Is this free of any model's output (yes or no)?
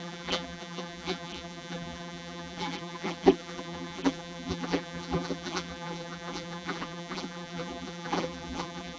no